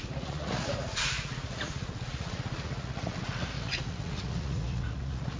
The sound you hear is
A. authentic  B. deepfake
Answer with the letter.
B